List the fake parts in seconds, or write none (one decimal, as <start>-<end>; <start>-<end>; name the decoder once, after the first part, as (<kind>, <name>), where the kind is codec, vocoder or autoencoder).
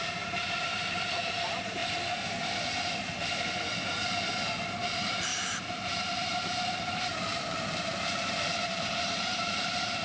0.0-1.8 (vocoder, BigVGAN v2); 4.8-10.0